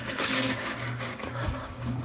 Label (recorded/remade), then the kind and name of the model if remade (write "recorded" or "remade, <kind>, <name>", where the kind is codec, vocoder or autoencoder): remade, codec, DAC